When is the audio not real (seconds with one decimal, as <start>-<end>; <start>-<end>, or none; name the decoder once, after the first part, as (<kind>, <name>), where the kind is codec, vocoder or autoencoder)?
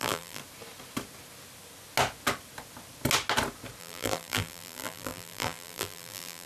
0.0-0.4 (vocoder, BigVGAN v2); 3.8-6.5